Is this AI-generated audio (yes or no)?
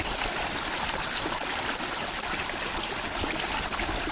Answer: no